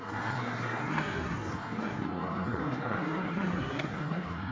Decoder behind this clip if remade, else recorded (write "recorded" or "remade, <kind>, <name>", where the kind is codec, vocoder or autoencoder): remade, codec, SNAC